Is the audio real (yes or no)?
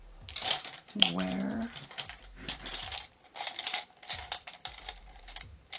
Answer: no